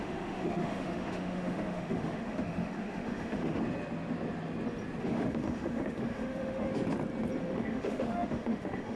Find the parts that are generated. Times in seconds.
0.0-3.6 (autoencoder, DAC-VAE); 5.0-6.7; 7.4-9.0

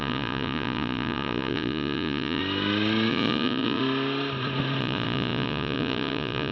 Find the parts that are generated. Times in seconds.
0.0-2.4 (vocoder, Vocos); 3.1-3.8; 4.8-6.5

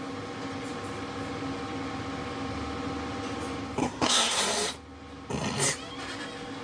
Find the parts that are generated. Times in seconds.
3.8-4.4 (codec, SNAC)